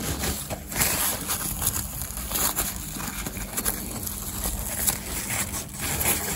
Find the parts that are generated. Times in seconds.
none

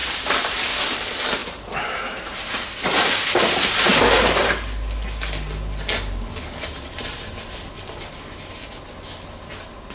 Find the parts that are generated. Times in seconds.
0.0-0.6 (vocoder, BigVGAN v2); 1.4-2.7

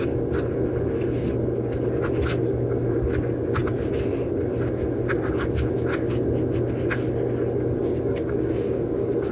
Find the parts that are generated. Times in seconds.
7.8-9.3 (codec, DAC)

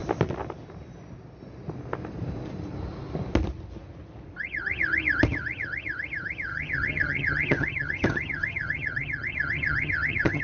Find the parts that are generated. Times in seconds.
6.5-10.4 (vocoder, HiFi-GAN)

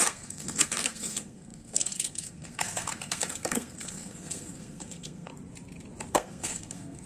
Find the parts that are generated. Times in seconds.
0.0-5.3 (codec, SNAC); 6.1-7.1